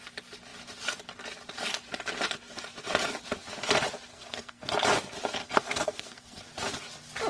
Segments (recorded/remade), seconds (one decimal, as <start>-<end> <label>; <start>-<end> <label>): 0.0-4.1 recorded; 4.1-4.7 remade; 4.7-5.4 recorded; 5.4-6.4 remade; 6.4-7.3 recorded